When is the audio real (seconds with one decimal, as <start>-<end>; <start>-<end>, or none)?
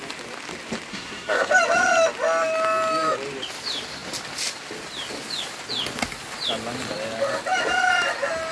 0.0-0.9; 1.5-8.5